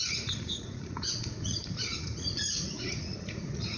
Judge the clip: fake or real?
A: fake